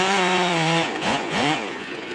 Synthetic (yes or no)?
yes